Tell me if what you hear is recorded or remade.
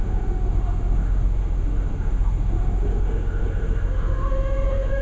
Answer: remade